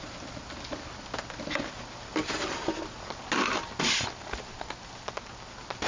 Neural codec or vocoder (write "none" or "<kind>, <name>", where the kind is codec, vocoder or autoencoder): none